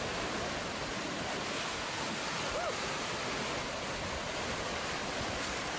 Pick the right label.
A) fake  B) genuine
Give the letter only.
B